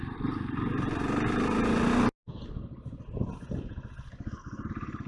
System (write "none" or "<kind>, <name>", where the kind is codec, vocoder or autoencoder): none